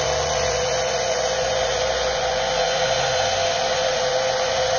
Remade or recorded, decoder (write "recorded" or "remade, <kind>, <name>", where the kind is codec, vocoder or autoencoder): remade, vocoder, Vocos